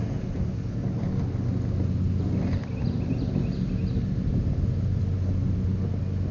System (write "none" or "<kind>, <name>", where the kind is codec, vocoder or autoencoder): none